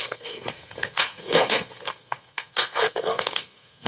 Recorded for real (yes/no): no